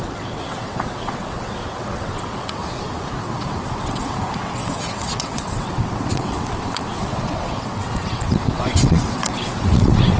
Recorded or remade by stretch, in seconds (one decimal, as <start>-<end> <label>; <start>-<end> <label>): 0.0-2.6 remade; 2.6-3.2 recorded; 3.2-10.2 remade